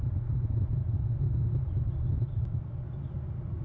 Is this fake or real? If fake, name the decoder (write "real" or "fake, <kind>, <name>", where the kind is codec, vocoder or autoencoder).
real